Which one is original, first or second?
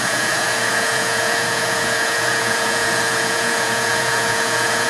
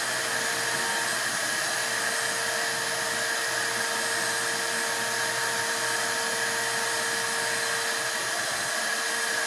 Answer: second